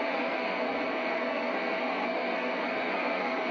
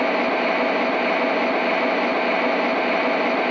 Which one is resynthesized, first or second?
first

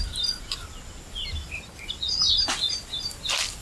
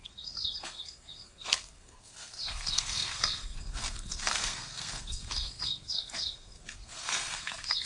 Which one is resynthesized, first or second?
second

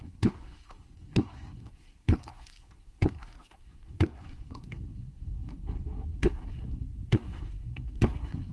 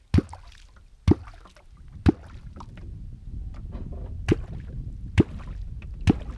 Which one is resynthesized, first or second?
first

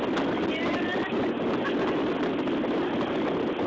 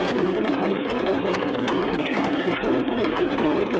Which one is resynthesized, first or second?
second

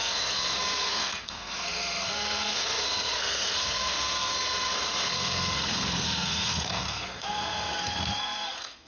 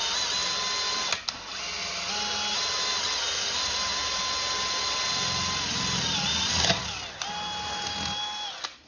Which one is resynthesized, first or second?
first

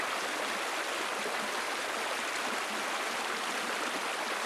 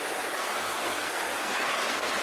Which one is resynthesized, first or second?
second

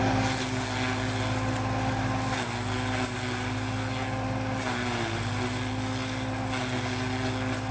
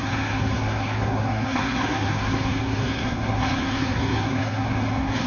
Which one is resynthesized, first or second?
second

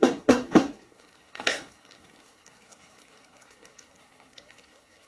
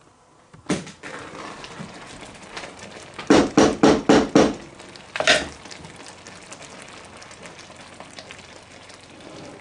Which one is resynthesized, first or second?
first